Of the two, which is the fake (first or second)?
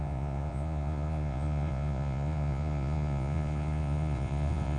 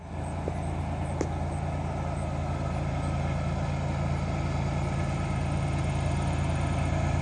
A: first